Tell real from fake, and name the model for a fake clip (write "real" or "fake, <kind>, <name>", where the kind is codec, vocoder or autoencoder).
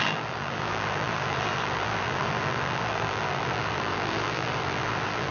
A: fake, vocoder, BigVGAN v2